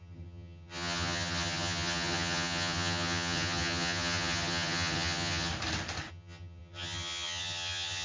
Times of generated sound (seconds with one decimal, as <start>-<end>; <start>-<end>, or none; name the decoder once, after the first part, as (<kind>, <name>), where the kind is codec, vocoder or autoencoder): 0.0-5.5 (vocoder, HiFi-GAN); 6.1-8.0

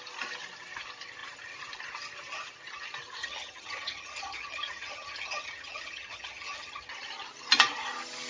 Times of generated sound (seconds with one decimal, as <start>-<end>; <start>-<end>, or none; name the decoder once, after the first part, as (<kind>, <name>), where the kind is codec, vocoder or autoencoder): 3.2-6.9 (vocoder, HiFi-GAN)